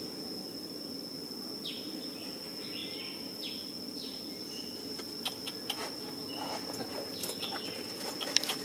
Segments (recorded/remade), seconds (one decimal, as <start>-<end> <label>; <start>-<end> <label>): 0.0-8.6 recorded